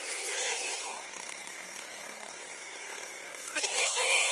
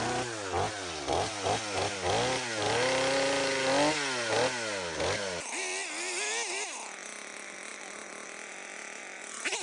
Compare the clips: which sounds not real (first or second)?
first